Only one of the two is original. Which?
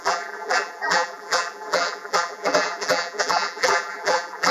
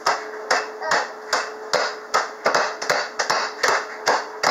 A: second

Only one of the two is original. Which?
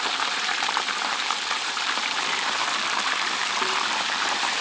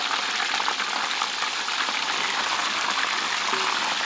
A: second